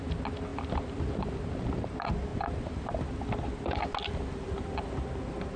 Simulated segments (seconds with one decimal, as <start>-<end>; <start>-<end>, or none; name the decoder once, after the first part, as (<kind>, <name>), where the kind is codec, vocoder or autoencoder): none